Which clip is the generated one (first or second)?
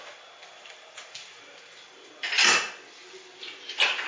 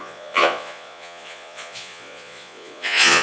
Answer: second